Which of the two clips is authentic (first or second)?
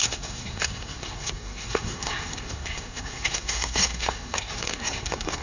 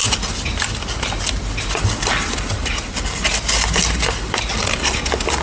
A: second